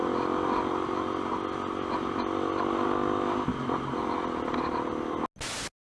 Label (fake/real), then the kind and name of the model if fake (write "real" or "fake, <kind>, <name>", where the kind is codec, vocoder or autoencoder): real